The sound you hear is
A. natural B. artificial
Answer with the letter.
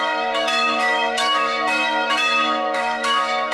B